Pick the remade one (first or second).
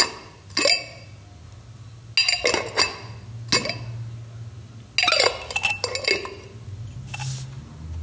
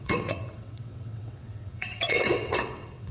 second